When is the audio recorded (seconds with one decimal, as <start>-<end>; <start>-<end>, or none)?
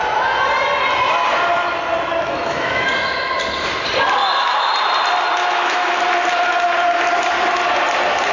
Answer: 0.0-2.1; 2.9-4.2; 4.7-5.4; 6.0-8.3